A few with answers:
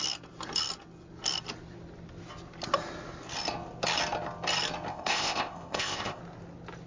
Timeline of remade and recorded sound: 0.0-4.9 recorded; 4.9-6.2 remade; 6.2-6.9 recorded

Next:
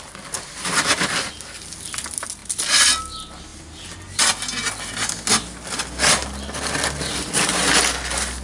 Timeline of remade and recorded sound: 0.0-8.4 recorded

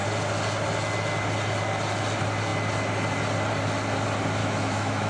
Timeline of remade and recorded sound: 0.0-4.4 recorded; 4.4-5.1 remade

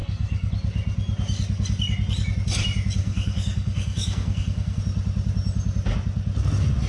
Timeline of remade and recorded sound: 0.0-0.5 remade; 0.5-3.0 recorded; 3.0-4.8 remade; 4.8-6.9 recorded

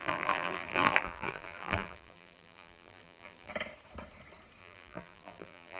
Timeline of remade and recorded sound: 0.0-3.5 remade; 3.5-4.6 recorded; 4.6-5.8 remade